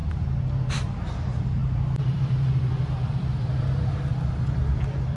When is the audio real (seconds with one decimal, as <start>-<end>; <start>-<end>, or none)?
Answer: none